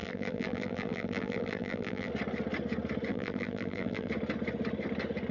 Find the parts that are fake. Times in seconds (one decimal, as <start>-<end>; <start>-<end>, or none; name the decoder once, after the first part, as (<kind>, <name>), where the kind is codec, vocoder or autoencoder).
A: 0.0-2.1 (vocoder, BigVGAN v2); 3.1-4.1